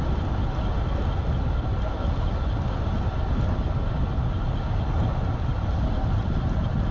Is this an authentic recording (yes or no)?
yes